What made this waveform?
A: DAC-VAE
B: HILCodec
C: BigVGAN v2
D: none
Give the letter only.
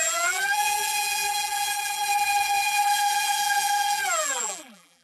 C